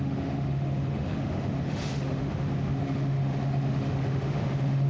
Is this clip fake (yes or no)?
yes